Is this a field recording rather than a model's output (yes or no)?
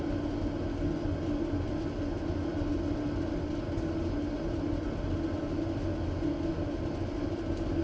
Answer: yes